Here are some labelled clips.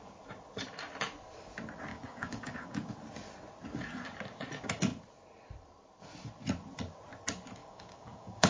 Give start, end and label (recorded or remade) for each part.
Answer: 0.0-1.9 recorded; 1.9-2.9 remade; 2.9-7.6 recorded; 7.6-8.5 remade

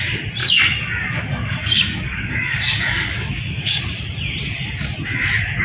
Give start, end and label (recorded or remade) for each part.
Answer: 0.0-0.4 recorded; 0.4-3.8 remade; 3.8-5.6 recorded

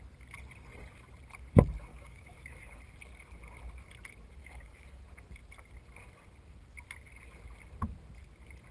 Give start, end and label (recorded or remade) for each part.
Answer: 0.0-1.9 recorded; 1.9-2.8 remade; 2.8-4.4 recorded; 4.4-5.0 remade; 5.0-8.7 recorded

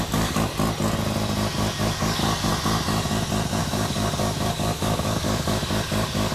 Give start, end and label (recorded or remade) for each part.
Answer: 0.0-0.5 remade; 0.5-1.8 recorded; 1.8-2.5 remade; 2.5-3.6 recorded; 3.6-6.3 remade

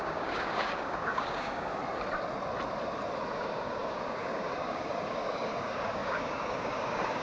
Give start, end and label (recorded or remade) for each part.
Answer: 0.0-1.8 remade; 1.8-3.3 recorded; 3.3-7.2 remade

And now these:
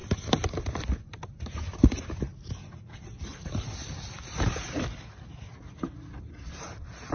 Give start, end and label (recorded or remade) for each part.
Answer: 0.0-7.1 recorded

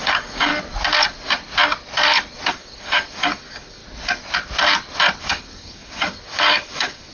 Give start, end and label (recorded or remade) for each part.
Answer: 0.0-0.5 remade; 0.5-2.5 recorded; 2.5-3.8 remade; 3.8-5.2 recorded; 5.2-7.1 remade

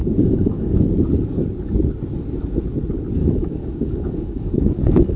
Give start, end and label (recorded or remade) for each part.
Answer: 0.0-0.8 remade; 0.8-3.2 recorded; 3.2-5.2 remade